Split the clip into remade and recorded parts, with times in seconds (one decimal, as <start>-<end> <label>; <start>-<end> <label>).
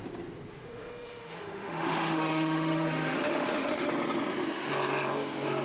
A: 0.0-0.5 recorded; 0.5-3.9 remade; 3.9-5.6 recorded